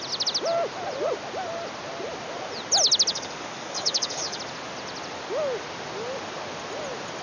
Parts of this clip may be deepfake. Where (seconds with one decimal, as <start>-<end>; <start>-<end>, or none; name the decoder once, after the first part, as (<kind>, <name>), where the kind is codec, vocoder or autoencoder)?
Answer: 3.1-4.4 (codec, DAC)